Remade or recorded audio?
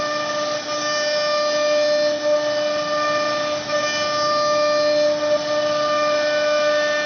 recorded